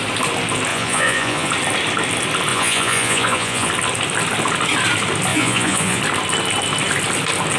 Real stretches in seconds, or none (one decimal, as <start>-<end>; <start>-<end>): 0.0-0.7; 1.5-2.5; 3.7-5.3; 6.0-7.6